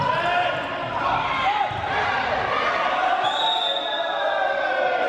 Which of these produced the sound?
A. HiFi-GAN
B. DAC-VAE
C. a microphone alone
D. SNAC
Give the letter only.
C